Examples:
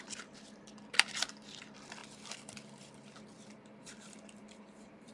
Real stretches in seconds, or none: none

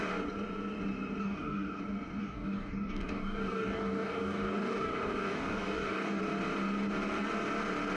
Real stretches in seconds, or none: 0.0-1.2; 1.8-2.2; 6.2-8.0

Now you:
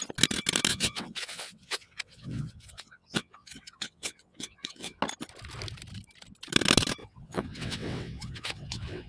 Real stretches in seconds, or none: 0.0-0.7; 5.0-7.0

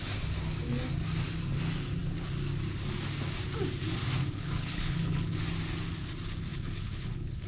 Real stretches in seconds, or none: 0.0-4.2; 5.4-6.5

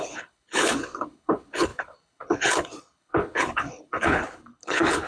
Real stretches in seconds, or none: none

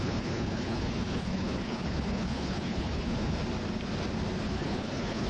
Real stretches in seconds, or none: 3.4-4.4